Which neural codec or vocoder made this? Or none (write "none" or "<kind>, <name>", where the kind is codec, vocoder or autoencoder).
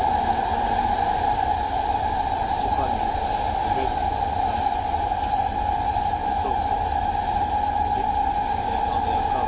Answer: none